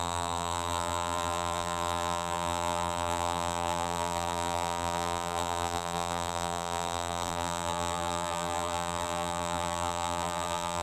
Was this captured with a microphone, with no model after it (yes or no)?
no